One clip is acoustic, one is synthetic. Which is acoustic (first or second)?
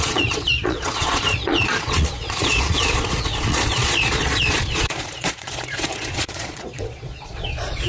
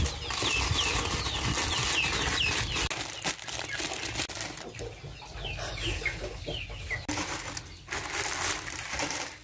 second